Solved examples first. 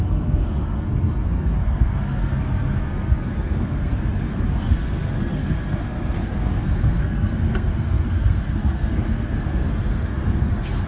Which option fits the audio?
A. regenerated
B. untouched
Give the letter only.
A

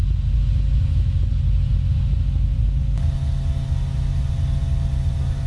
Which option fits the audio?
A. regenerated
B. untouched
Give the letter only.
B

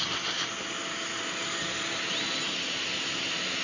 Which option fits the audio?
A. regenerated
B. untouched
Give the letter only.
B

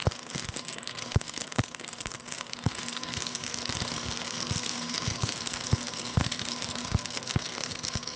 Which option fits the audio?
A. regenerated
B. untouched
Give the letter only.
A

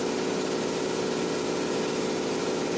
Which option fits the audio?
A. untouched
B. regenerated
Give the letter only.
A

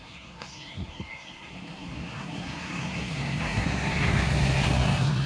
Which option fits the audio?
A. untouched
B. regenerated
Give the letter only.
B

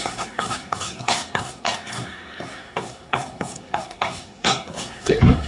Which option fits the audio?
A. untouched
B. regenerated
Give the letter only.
B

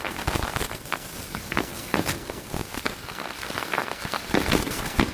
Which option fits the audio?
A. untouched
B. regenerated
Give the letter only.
B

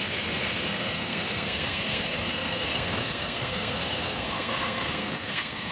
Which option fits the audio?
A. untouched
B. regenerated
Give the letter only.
B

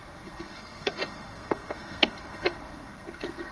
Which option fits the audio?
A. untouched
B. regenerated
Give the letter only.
B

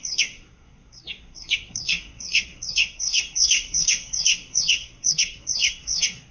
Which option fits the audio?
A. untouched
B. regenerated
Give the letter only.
B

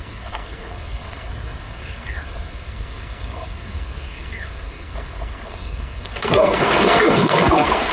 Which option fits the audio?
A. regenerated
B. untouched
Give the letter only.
A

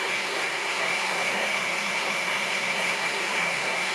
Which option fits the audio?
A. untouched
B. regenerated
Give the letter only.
B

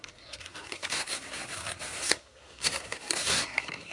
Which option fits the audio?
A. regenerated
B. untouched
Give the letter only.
A